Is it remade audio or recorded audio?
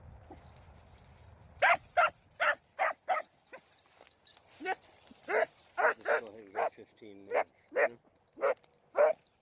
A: recorded